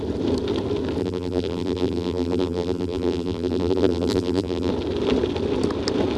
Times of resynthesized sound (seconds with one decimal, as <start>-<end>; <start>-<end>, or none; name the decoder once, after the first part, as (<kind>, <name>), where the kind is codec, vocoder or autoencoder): 1.0-4.7 (vocoder, BigVGAN v2)

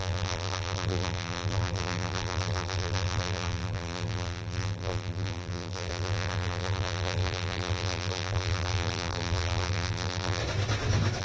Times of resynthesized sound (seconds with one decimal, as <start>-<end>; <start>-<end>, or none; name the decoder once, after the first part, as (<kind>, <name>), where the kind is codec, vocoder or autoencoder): 0.0-10.4 (vocoder, BigVGAN v2)